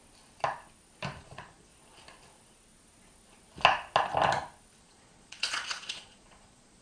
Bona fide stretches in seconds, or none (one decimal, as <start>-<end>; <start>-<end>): 0.0-1.2; 1.7-4.8